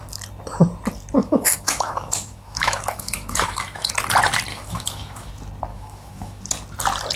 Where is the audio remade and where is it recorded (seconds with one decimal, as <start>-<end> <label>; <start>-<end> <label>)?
0.0-1.2 recorded; 1.2-3.9 remade; 3.9-4.5 recorded; 4.5-5.3 remade; 5.3-5.7 recorded; 5.7-6.4 remade; 6.4-7.2 recorded

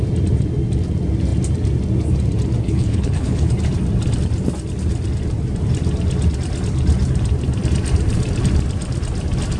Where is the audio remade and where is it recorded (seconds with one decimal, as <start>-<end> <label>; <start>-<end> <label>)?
0.0-2.6 recorded; 2.6-3.5 remade; 3.5-9.6 recorded

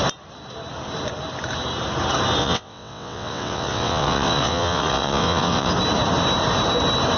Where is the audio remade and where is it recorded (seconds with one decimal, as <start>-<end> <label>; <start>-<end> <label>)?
0.0-2.4 recorded; 2.4-5.7 remade; 5.7-7.2 recorded

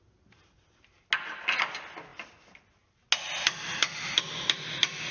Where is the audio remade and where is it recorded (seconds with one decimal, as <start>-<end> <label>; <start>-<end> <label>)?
0.0-5.1 recorded